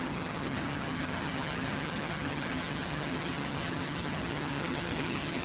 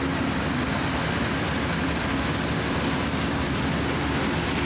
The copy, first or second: first